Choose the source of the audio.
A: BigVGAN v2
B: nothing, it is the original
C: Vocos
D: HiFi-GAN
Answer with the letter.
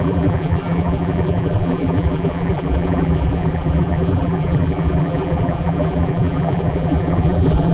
A